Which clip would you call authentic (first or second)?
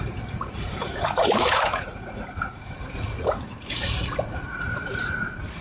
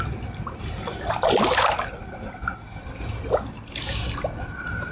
second